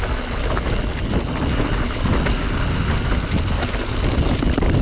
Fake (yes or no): no